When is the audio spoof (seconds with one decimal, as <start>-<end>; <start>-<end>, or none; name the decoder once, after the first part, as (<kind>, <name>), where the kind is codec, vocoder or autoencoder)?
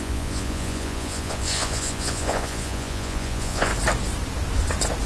0.0-3.7 (vocoder, Vocos)